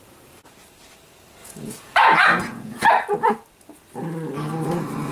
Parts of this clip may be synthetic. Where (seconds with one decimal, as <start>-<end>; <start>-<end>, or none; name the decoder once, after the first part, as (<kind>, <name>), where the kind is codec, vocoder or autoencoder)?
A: 1.4-2.9 (vocoder, Vocos)